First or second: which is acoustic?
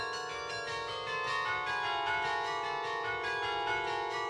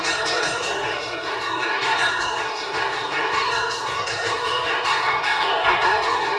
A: first